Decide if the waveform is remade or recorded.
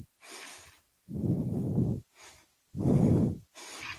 recorded